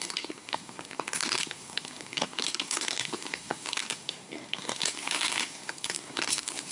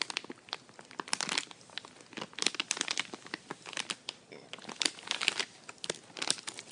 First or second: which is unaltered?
second